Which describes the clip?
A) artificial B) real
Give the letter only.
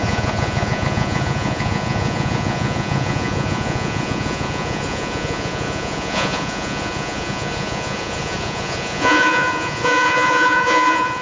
A